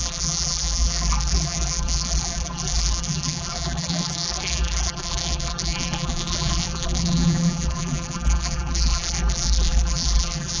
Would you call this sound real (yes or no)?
no